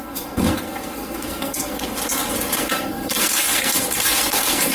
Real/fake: fake